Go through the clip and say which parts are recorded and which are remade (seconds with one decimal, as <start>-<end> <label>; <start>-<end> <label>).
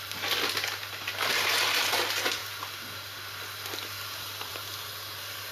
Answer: 0.0-5.5 recorded